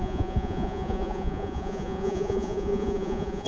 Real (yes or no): no